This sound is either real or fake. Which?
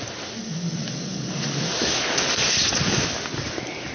real